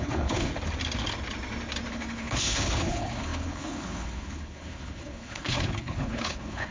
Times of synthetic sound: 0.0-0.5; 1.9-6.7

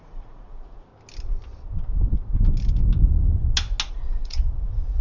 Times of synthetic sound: 0.0-0.9; 3.9-5.0

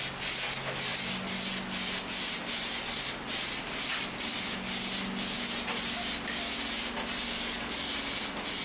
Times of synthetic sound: none

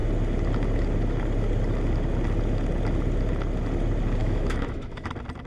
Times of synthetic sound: 4.2-5.1

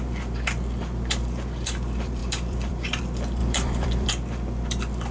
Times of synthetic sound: 2.2-3.0; 3.4-4.1

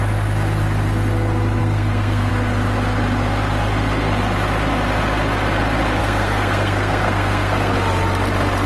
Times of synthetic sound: 1.6-2.3; 6.0-7.7